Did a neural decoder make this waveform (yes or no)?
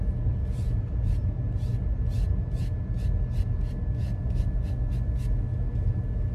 no